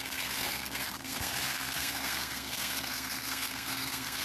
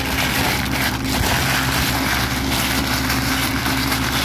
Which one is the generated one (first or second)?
first